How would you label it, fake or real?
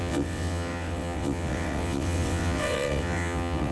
fake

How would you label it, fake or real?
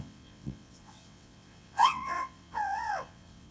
fake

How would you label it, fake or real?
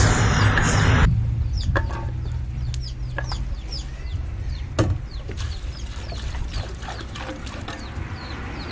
real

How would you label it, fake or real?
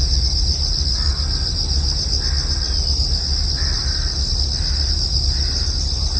real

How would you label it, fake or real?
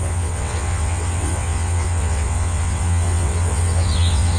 fake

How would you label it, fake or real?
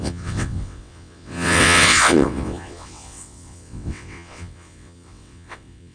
fake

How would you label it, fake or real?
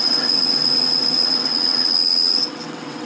fake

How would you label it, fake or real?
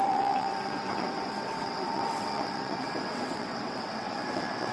fake